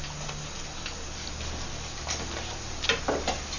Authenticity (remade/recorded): recorded